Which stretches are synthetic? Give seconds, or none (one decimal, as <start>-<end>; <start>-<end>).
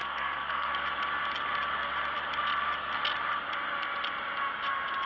0.0-0.7